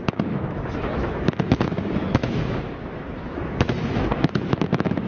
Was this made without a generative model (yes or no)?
no